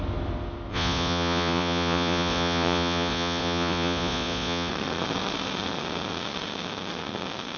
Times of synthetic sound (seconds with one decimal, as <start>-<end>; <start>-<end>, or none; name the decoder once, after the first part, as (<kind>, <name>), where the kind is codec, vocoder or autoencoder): 0.7-4.7 (vocoder, Vocos)